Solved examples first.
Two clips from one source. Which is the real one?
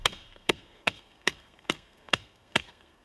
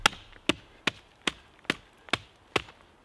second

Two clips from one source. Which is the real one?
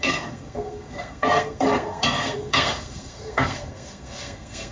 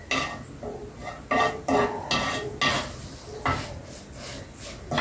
second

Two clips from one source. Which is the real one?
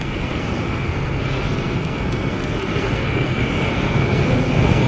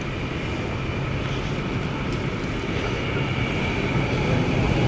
second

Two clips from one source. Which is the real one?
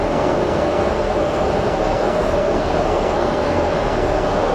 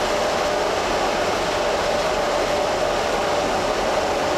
second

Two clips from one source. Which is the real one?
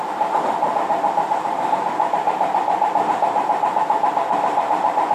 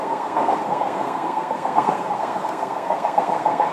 first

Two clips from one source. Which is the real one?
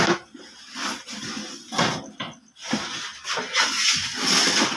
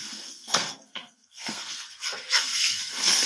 first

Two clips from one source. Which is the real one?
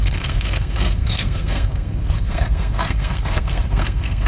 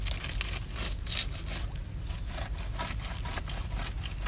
second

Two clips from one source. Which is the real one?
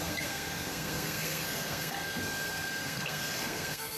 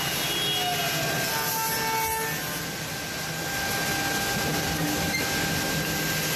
second